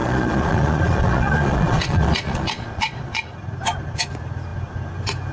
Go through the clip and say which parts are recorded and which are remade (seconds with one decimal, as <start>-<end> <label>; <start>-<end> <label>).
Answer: 0.0-3.2 remade; 3.2-5.3 recorded